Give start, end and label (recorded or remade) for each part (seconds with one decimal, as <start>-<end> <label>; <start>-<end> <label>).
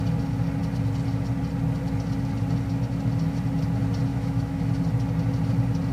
0.0-4.1 recorded; 4.1-4.7 remade; 4.7-5.9 recorded